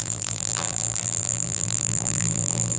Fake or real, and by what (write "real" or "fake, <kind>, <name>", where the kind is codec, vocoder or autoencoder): fake, vocoder, BigVGAN v2